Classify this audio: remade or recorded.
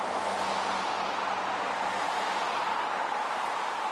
recorded